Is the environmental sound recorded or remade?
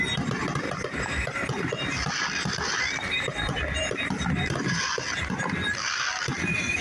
remade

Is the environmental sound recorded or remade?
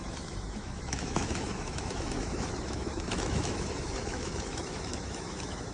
remade